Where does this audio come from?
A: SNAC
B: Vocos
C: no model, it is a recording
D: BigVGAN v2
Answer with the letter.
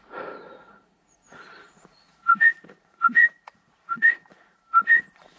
B